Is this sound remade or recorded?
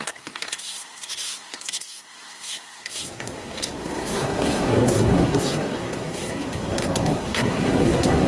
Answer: remade